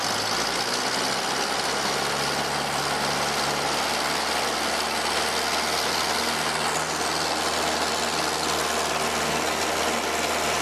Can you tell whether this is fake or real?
real